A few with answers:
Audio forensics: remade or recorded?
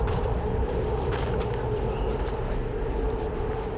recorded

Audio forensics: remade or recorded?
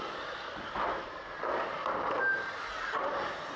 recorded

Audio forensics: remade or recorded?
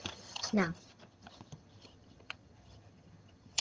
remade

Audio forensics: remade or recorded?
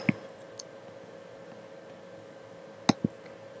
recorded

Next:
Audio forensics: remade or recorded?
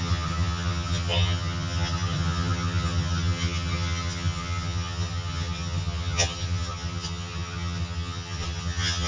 remade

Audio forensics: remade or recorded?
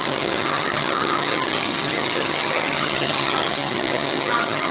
remade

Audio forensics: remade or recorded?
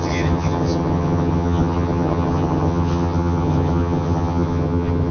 remade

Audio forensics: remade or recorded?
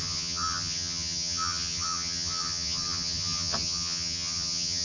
remade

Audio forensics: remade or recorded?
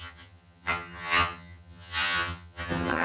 remade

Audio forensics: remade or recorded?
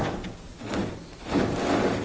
recorded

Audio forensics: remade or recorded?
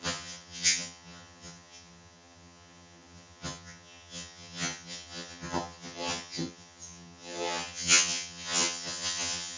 remade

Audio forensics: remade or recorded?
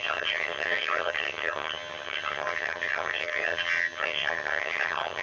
remade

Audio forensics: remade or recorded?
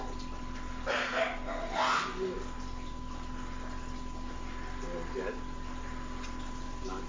recorded